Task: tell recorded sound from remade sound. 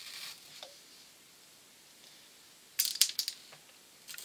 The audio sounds recorded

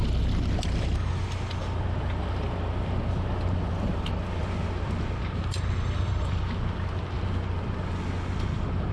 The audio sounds recorded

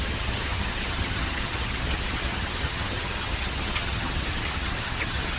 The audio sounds remade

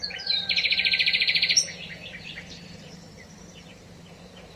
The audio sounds remade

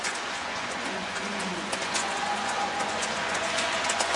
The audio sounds remade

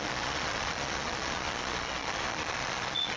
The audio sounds remade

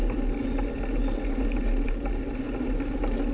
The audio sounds recorded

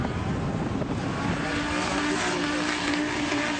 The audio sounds recorded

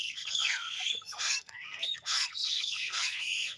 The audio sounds remade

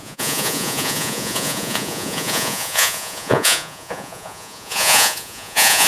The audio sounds remade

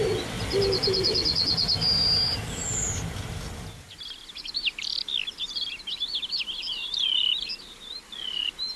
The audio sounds remade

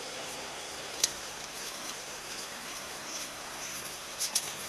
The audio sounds remade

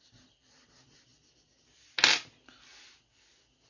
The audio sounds recorded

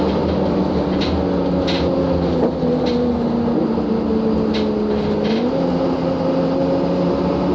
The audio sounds recorded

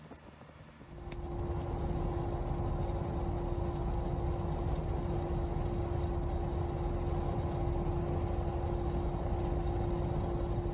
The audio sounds recorded